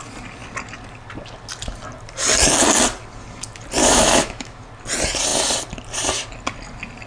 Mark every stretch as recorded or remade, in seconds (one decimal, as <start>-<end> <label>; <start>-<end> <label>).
0.0-3.8 recorded; 3.8-4.6 remade; 4.6-7.1 recorded